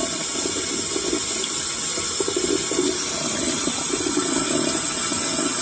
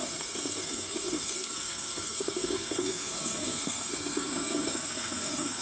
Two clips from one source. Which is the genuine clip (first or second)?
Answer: first